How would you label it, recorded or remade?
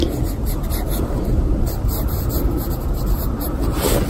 recorded